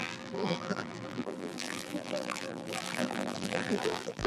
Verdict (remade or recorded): remade